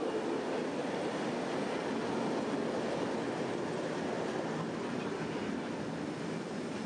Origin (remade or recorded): recorded